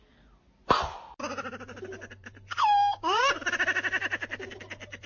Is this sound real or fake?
real